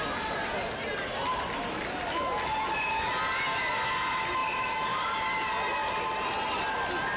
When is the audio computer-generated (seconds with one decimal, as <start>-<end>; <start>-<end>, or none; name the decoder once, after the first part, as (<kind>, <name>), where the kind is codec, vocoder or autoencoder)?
4.4-5.2 (vocoder, BigVGAN v2)